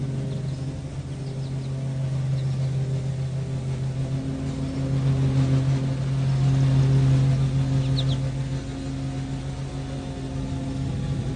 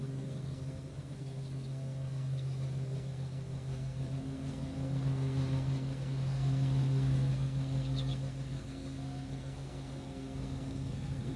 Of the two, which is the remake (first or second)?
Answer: second